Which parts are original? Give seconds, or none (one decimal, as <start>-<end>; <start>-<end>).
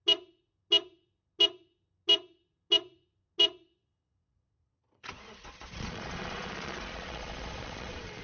0.0-3.8